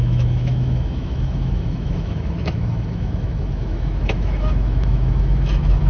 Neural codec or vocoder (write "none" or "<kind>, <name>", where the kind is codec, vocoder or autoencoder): autoencoder, DAC-VAE